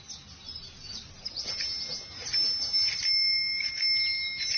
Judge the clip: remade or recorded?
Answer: recorded